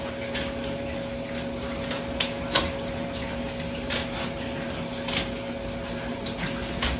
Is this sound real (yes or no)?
yes